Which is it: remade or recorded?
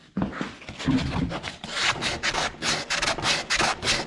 recorded